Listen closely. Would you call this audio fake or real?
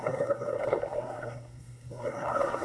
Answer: fake